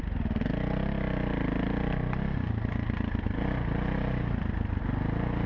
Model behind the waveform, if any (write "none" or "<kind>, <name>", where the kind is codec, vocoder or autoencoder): none